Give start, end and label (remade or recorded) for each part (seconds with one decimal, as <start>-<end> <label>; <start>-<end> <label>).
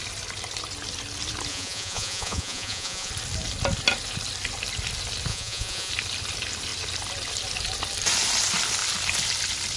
0.0-1.5 recorded; 1.5-3.1 remade; 3.1-5.3 recorded; 5.3-5.9 remade; 5.9-9.8 recorded